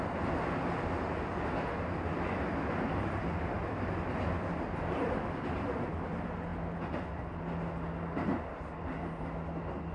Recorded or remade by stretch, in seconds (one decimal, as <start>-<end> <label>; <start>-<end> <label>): 0.0-9.9 recorded